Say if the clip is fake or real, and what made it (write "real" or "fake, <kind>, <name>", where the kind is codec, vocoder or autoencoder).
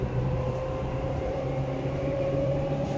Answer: fake, vocoder, BigVGAN v2